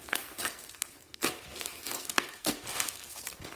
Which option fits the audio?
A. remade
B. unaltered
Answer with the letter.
A